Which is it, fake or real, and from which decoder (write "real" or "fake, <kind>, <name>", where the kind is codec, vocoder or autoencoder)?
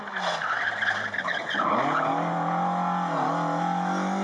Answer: real